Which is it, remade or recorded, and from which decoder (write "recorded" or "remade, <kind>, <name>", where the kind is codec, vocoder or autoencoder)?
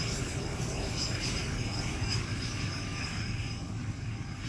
remade, codec, DAC